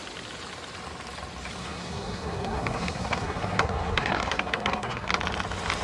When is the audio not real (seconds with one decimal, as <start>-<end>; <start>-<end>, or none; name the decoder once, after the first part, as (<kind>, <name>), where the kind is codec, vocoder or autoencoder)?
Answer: 1.6-5.1 (codec, SNAC)

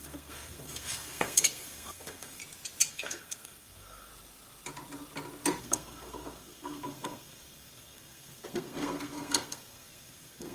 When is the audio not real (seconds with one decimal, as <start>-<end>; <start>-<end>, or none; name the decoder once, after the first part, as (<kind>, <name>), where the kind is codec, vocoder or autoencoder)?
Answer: 0.0-2.4 (codec, SNAC); 2.9-4.1; 5.6-10.5

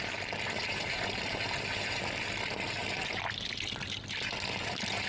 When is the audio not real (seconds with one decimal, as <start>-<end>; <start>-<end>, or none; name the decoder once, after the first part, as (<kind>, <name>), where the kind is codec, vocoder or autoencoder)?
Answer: 0.6-2.0 (vocoder, BigVGAN v2)

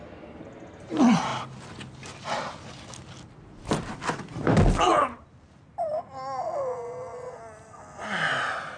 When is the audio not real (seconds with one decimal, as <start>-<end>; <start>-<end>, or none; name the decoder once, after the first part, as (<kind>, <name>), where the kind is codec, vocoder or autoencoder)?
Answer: 1.3-6.0 (vocoder, BigVGAN v2)